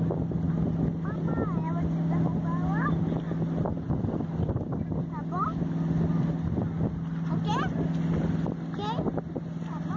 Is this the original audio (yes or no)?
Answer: yes